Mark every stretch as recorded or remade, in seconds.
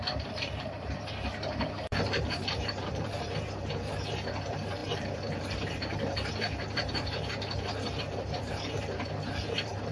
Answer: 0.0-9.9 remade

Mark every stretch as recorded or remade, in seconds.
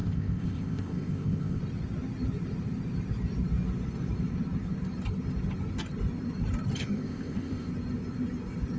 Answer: 0.0-1.6 remade; 1.6-6.8 recorded; 6.8-7.7 remade; 7.7-8.8 recorded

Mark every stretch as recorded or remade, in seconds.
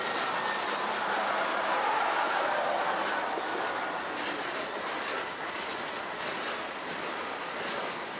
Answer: 0.0-1.5 recorded; 1.5-2.8 remade; 2.8-8.2 recorded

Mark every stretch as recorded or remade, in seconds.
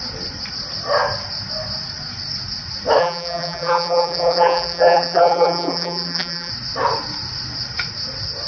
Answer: 0.0-3.0 recorded; 3.0-6.5 remade; 6.5-8.5 recorded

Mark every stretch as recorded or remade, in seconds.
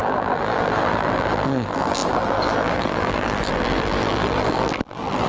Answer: 0.0-5.3 remade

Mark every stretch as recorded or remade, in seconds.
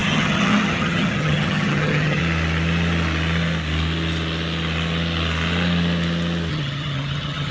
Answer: 0.0-2.2 remade; 2.2-6.5 recorded; 6.5-7.5 remade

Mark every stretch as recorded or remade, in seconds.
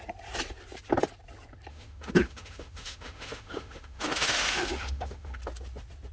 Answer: 0.0-1.7 recorded; 1.7-5.4 remade; 5.4-6.1 recorded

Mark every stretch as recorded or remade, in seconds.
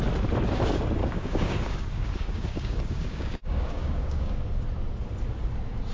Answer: 0.0-1.0 recorded; 1.0-4.5 remade; 4.5-5.9 recorded